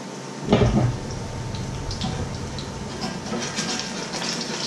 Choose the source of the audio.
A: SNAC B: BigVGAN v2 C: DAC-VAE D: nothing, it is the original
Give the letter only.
D